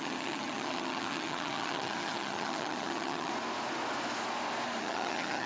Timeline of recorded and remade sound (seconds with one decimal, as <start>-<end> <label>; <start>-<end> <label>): 0.0-3.3 remade; 3.3-4.8 recorded; 4.8-5.5 remade